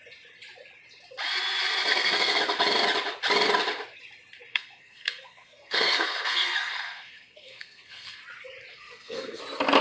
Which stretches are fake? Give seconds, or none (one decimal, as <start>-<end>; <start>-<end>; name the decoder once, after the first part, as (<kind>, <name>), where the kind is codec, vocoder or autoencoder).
1.9-2.4 (codec, SNAC); 4.5-8.2; 8.7-9.4